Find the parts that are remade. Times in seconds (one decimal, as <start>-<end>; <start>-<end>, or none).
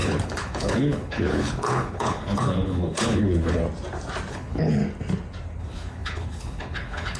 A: 0.0-3.6; 4.3-4.8; 5.6-7.2